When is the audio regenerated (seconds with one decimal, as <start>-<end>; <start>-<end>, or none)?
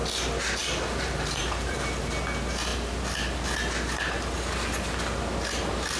0.6-2.1